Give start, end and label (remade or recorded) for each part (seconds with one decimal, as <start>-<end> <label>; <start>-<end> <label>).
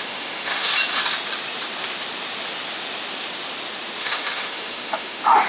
0.0-0.7 remade; 0.7-4.0 recorded; 4.0-5.5 remade